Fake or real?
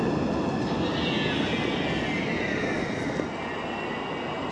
real